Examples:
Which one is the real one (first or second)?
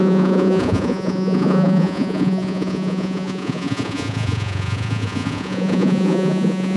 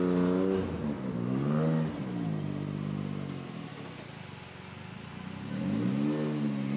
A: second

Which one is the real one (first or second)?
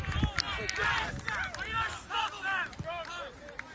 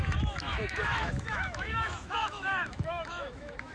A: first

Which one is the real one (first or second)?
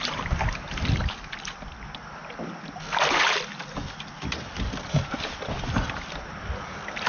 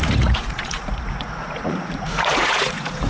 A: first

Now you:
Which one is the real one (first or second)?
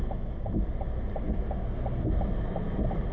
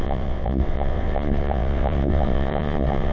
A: first